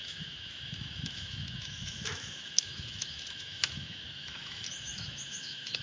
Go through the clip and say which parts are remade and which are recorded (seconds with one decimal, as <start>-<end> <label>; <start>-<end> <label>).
0.0-5.8 remade